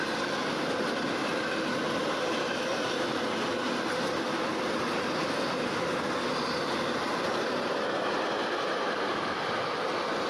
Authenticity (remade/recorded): recorded